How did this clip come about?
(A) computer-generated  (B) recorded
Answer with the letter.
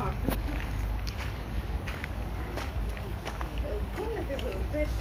A